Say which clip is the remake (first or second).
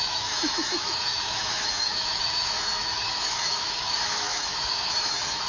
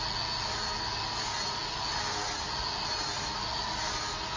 first